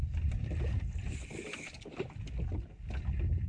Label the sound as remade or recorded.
recorded